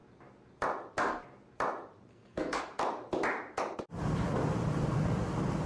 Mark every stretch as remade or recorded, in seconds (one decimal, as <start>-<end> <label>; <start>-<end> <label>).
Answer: 0.0-2.1 recorded; 2.1-2.6 remade; 2.6-5.7 recorded